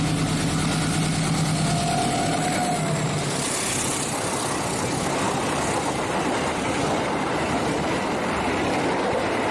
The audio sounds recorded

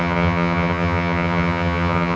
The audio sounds remade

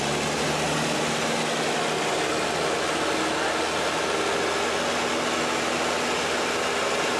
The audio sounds recorded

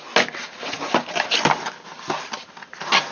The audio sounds recorded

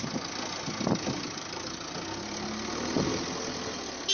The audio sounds recorded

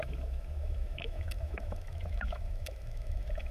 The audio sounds remade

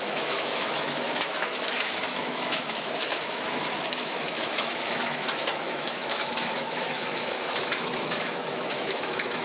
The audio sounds remade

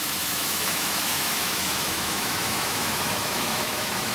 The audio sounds remade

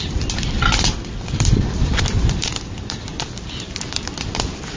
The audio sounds remade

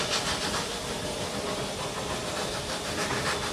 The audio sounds recorded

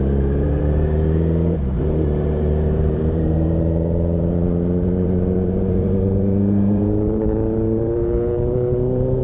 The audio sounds remade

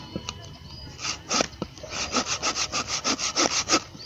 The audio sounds recorded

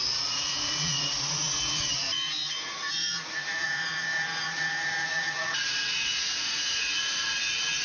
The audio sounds remade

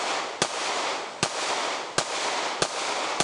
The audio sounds recorded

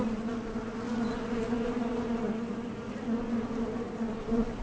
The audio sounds recorded